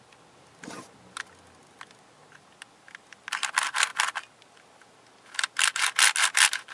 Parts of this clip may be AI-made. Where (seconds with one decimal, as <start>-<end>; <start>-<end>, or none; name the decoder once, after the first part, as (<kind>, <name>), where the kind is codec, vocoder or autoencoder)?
none